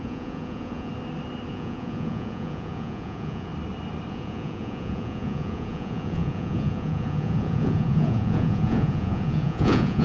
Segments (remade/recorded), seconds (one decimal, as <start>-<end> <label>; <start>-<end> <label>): 0.0-0.9 remade; 0.9-1.5 recorded; 1.5-3.5 remade; 3.5-4.1 recorded; 4.1-10.0 remade